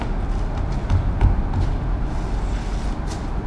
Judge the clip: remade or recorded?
recorded